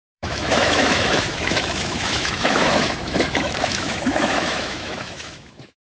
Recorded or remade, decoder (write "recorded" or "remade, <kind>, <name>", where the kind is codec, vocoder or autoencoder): remade, autoencoder, DAC-VAE